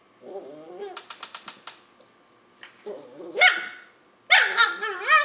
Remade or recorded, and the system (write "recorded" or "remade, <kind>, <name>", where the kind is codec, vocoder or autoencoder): recorded